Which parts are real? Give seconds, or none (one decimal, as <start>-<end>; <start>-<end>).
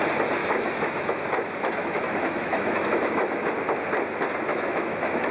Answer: 0.0-0.4; 1.2-1.8; 3.5-4.5